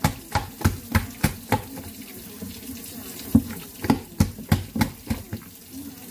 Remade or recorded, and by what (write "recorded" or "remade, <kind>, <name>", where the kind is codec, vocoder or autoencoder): recorded